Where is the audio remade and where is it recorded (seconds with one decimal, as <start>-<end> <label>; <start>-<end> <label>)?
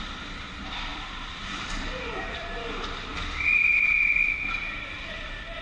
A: 0.0-3.1 remade; 3.1-3.6 recorded; 3.6-5.6 remade